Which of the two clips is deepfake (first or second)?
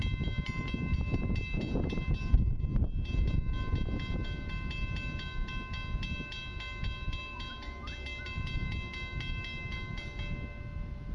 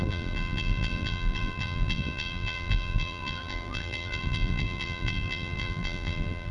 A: second